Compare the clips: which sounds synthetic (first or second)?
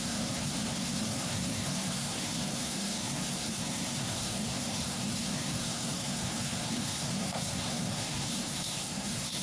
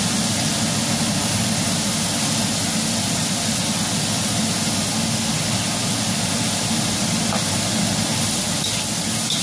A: first